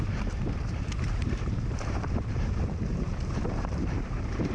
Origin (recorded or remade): remade